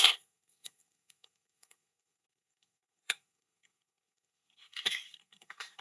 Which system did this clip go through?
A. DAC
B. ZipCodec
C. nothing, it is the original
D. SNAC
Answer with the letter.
D